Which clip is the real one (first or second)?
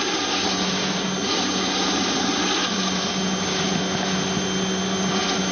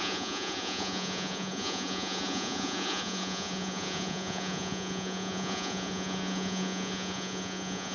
first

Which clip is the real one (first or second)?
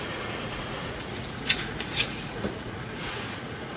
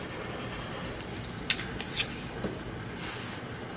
second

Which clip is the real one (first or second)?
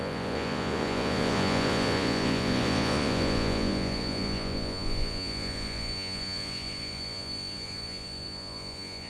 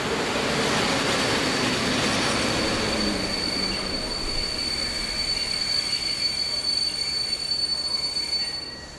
second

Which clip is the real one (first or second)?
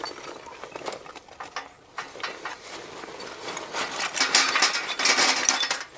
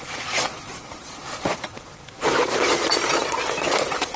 first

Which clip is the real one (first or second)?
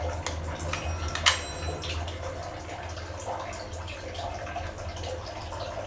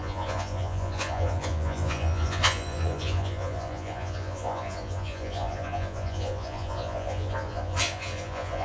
first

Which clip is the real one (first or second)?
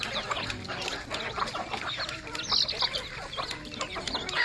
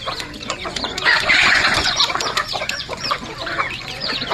first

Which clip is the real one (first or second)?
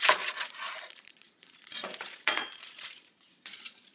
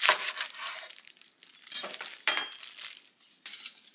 second